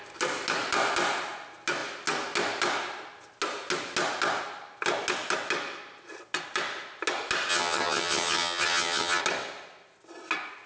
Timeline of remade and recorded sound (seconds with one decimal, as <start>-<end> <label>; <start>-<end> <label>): 0.0-7.5 recorded; 7.5-9.2 remade; 9.2-10.7 recorded